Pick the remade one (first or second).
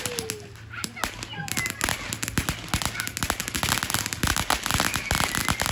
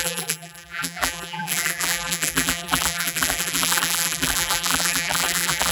second